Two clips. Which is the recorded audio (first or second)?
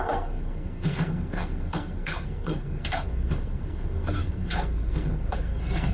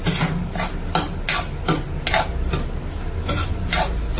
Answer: second